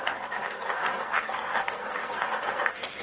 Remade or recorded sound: remade